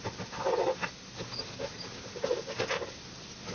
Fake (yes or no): no